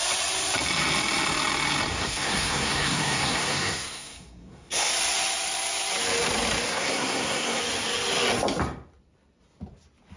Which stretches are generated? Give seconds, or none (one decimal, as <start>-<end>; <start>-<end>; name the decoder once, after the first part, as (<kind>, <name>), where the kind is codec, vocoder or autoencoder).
1.9-4.9 (codec, SNAC); 6.7-7.6